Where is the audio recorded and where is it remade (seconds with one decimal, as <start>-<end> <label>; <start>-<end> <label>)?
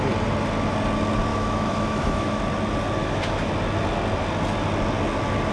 0.0-1.3 recorded; 1.3-2.4 remade; 2.4-3.0 recorded; 3.0-3.5 remade; 3.5-5.5 recorded